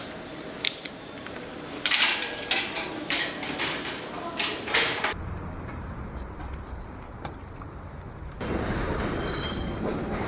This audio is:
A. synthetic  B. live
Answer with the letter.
A